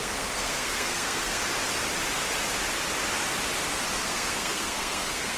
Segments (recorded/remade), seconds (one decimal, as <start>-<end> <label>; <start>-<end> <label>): 0.0-1.4 remade; 1.4-3.9 recorded; 3.9-5.4 remade